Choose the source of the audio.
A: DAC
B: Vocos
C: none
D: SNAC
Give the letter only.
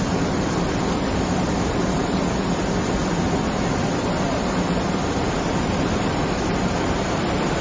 C